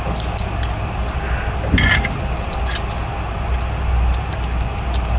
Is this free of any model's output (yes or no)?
yes